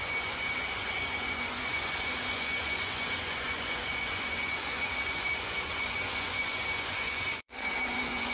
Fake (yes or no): yes